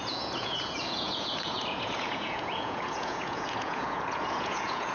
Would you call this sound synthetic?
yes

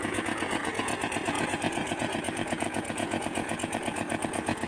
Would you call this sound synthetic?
yes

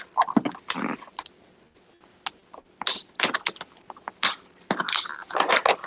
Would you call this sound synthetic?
no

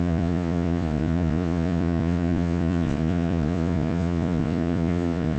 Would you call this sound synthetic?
yes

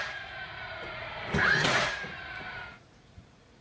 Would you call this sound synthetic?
yes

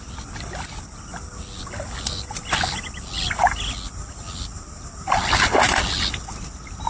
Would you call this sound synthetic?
no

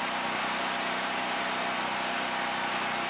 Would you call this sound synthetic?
no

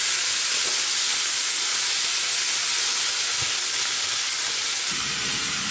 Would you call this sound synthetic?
no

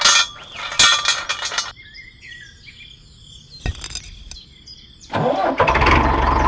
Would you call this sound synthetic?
no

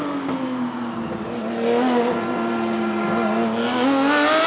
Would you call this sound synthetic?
no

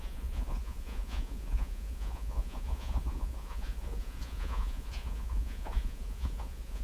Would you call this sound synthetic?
yes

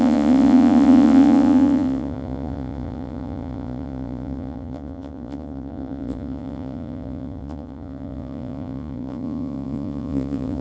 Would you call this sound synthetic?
yes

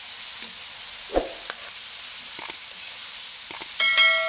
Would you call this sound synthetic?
no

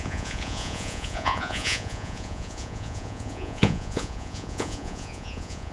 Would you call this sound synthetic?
yes